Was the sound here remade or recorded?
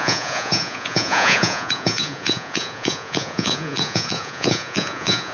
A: remade